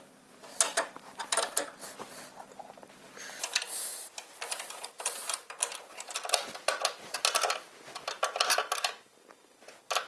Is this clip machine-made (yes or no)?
no